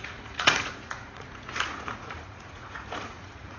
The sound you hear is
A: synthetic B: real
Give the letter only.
A